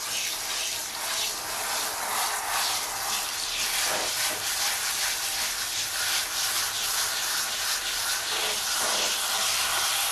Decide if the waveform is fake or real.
fake